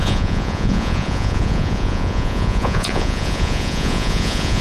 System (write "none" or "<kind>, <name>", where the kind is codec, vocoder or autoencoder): vocoder, Vocos